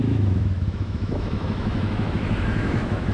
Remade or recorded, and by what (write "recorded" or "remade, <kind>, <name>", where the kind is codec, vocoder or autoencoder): remade, autoencoder, DAC-VAE